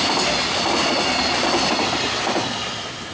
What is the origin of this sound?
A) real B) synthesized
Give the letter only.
A